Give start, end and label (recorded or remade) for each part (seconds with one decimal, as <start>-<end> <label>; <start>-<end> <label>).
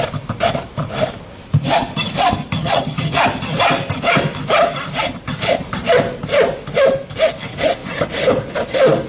0.0-2.6 recorded; 2.6-3.2 remade; 3.2-9.1 recorded